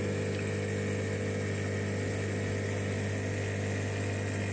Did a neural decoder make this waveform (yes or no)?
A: no